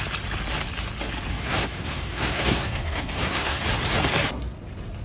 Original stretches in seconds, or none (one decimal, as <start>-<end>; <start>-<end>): 0.0-1.3; 3.6-5.0